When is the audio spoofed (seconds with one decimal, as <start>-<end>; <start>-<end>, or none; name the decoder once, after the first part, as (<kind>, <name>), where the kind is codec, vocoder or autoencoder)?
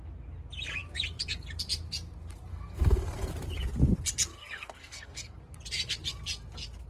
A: 2.5-3.3 (codec, SNAC); 4.3-5.4